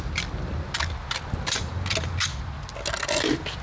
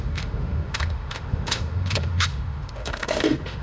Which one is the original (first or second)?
first